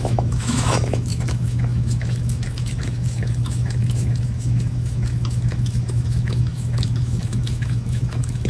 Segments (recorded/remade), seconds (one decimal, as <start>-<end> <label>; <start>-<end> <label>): 0.0-8.5 remade